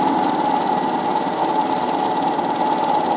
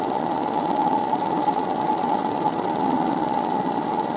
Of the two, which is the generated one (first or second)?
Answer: second